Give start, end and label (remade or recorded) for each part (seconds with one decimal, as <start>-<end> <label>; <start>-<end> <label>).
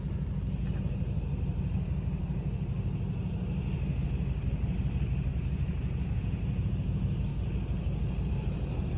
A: 0.0-5.3 recorded; 5.3-6.7 remade; 6.7-9.0 recorded